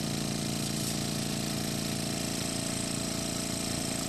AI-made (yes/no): no